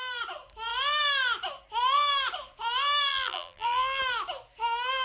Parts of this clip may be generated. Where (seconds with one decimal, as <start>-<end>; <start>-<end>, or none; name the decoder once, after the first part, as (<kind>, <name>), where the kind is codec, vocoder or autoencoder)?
3.1-4.0 (vocoder, BigVGAN v2)